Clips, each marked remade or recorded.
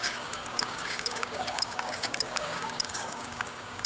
remade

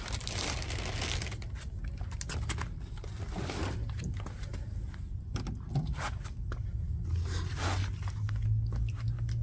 recorded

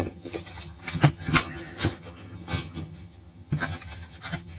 remade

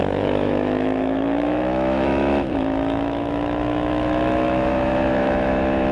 remade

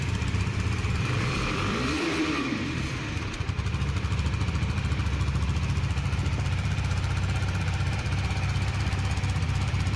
remade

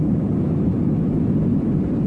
recorded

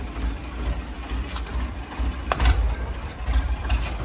remade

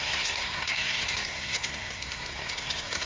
remade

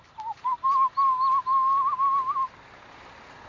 recorded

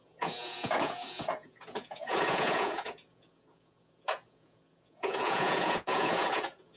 remade